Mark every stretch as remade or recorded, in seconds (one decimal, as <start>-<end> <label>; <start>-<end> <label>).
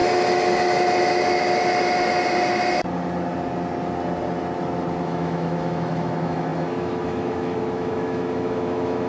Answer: 0.0-5.0 recorded; 5.0-9.1 remade